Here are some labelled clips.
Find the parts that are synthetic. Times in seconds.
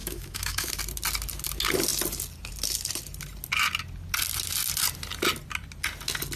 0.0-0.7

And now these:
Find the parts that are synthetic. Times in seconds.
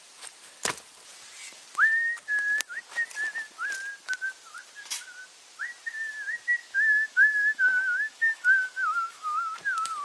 6.6-9.6